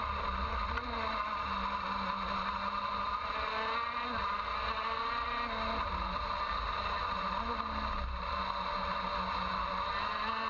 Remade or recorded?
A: recorded